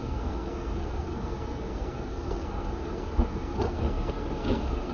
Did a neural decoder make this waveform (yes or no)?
yes